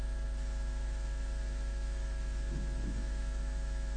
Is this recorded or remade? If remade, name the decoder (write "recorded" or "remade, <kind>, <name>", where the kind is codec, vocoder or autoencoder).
remade, autoencoder, DAC-VAE